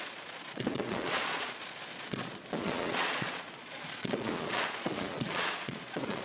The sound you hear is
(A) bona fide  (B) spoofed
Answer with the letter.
B